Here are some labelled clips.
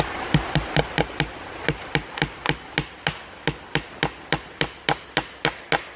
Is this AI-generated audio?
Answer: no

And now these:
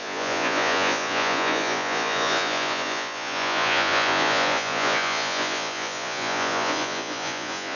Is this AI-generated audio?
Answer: yes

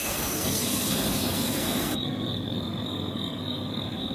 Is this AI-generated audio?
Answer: yes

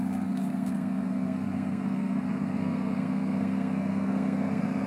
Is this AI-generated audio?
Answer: yes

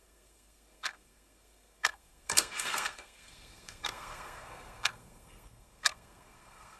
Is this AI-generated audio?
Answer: yes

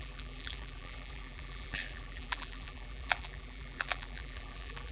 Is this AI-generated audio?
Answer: yes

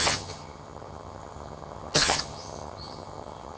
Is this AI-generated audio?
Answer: yes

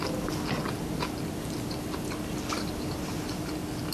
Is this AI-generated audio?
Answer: no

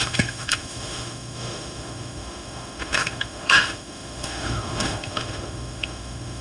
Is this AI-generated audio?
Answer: yes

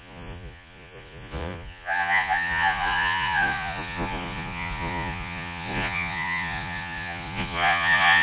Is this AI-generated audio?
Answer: yes